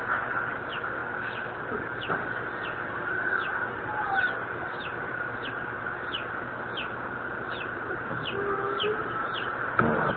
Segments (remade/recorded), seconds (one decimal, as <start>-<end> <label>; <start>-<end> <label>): 0.0-10.2 recorded